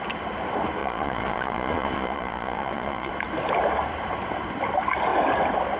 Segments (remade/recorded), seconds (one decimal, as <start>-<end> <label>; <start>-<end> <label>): 0.0-0.8 recorded; 0.8-3.1 remade; 3.1-5.8 recorded